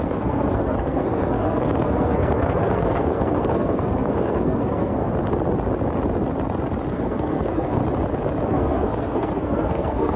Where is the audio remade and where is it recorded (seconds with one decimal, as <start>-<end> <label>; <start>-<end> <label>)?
0.0-5.1 remade; 5.1-6.9 recorded; 6.9-7.8 remade; 7.8-8.5 recorded; 8.5-10.2 remade